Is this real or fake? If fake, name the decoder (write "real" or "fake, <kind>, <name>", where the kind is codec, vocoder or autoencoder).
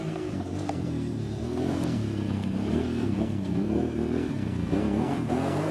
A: fake, codec, SNAC